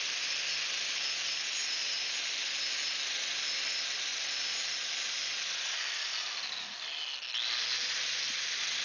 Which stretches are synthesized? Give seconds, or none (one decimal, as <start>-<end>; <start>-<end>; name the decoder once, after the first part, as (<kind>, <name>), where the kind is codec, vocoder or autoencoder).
none